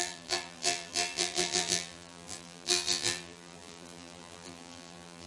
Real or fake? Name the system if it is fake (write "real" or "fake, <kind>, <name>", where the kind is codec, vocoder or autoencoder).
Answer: fake, vocoder, BigVGAN v2